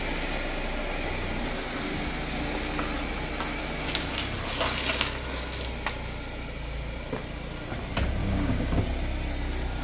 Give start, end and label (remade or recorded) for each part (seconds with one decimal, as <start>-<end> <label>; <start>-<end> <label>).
0.0-8.2 recorded; 8.2-8.8 remade; 8.8-9.8 recorded